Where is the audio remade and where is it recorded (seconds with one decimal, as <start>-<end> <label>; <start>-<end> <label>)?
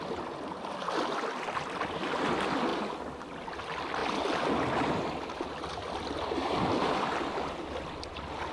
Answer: 0.0-8.5 recorded